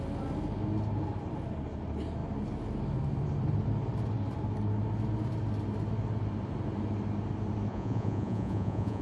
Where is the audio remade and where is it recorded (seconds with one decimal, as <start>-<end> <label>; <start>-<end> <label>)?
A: 0.0-7.7 recorded; 7.7-9.0 remade

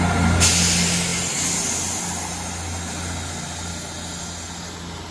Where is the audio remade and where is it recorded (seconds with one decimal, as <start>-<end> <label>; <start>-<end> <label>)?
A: 0.0-5.1 recorded

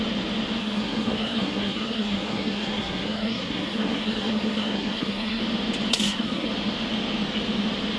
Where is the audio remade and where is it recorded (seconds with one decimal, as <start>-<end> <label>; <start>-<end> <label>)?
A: 0.0-0.6 recorded; 0.6-5.4 remade; 5.4-5.9 recorded; 5.9-6.5 remade; 6.5-8.0 recorded

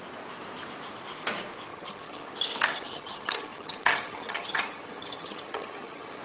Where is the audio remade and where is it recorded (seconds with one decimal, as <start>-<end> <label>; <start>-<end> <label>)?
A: 0.0-1.7 recorded; 1.7-2.3 remade; 2.3-2.7 recorded; 2.7-6.2 remade

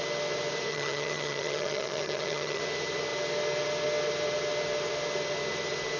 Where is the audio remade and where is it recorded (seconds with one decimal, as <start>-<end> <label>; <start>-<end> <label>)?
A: 0.0-0.7 recorded; 0.7-2.6 remade; 2.6-6.0 recorded

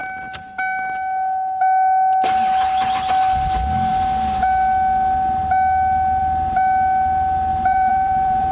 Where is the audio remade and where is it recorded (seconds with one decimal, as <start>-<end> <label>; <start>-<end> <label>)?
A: 0.0-7.5 recorded; 7.5-8.5 remade

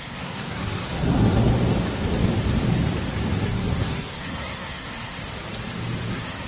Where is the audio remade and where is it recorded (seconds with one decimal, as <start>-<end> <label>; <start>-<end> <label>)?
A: 0.0-1.5 remade; 1.5-3.4 recorded; 3.4-5.2 remade; 5.2-6.1 recorded; 6.1-6.5 remade